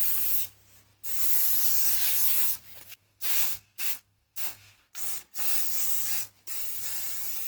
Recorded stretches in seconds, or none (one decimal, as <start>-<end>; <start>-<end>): 0.0-2.8; 4.9-7.5